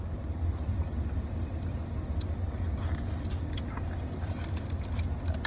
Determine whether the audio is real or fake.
real